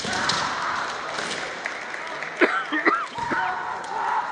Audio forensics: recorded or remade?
recorded